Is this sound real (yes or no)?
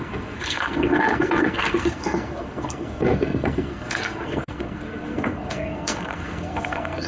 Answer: no